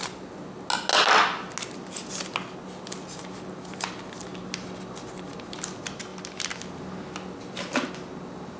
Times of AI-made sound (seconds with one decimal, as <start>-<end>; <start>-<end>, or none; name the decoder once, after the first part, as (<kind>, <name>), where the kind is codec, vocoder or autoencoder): none